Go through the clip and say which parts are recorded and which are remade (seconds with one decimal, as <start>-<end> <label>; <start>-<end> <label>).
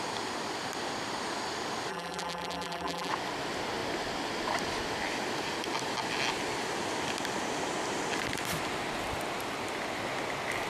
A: 0.0-1.9 recorded; 1.9-3.1 remade; 3.1-10.7 recorded